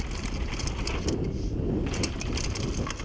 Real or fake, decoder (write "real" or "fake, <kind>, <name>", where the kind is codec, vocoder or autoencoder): real